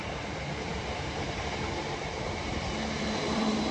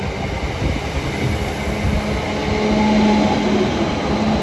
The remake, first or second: first